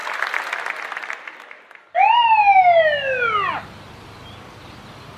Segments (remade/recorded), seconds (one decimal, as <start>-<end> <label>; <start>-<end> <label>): 0.0-5.2 recorded